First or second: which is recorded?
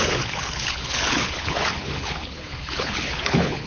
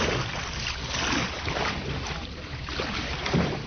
second